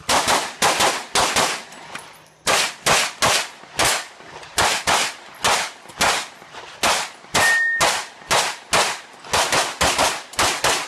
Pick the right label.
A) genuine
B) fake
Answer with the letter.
A